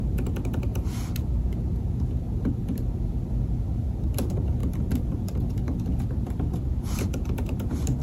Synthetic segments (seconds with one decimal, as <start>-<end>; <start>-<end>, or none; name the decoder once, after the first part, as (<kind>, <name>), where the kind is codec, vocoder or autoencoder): 4.6-7.1 (vocoder, BigVGAN v2)